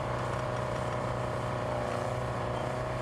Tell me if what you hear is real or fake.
fake